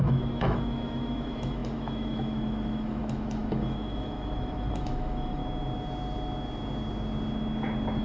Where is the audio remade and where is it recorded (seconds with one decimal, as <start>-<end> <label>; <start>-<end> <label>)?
0.0-5.4 remade; 5.4-8.0 recorded